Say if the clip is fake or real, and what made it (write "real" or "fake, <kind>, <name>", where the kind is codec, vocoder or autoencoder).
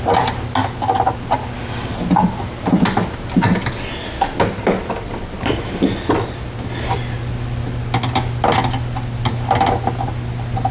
real